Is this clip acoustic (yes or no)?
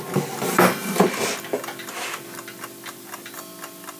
yes